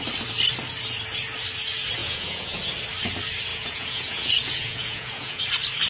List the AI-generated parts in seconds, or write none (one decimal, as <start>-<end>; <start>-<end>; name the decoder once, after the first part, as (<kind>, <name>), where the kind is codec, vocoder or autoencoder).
2.0-2.6 (vocoder, Vocos); 3.5-5.4